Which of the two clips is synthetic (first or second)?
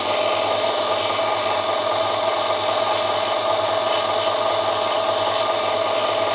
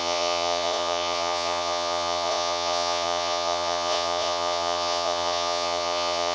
second